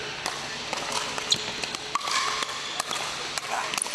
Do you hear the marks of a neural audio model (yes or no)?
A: no